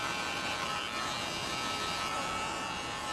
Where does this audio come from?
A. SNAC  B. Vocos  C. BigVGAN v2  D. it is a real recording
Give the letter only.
D